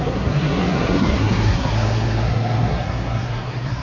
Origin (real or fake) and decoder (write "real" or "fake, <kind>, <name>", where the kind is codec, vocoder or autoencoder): fake, codec, SNAC